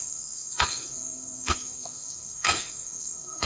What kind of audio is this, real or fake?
fake